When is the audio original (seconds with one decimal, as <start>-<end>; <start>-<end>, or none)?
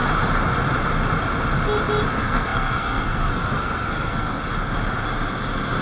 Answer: 0.0-2.1; 4.4-5.8